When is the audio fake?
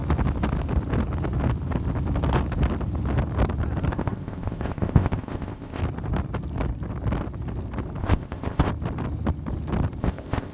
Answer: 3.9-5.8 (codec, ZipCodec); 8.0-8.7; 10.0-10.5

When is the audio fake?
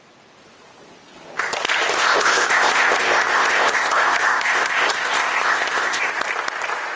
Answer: 1.9-6.1 (codec, ZipCodec)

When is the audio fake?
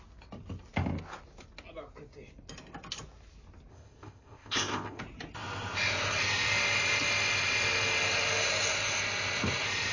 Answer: 3.7-5.0 (codec, ZipCodec)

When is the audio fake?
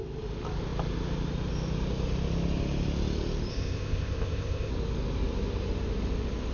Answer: 3.5-4.7 (codec, ZipCodec)